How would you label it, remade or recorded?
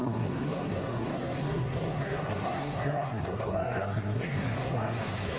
remade